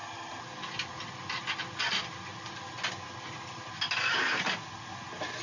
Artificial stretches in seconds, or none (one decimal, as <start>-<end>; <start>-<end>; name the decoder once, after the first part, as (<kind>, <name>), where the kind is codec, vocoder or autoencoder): 0.0-0.5 (vocoder, BigVGAN v2)